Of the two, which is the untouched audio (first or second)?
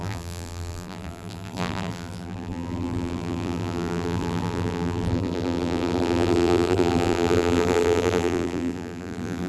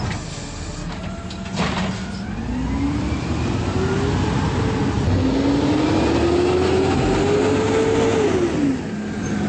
second